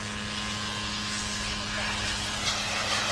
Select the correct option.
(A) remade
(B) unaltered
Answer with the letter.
B